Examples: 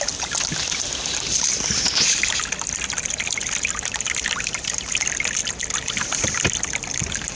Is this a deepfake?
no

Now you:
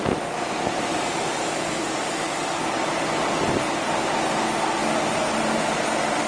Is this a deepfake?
no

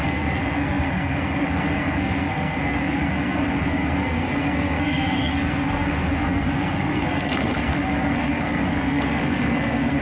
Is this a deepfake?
yes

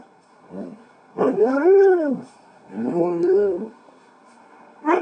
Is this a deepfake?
yes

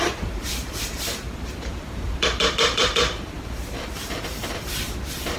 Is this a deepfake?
yes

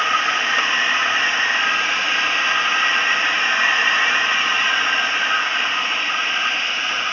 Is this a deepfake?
no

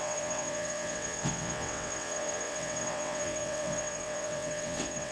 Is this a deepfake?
yes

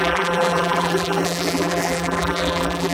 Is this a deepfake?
yes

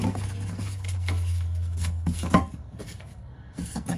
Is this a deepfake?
yes